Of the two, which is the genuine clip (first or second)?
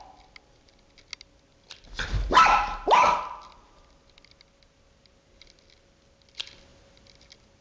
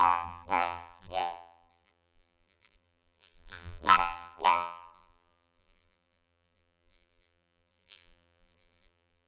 first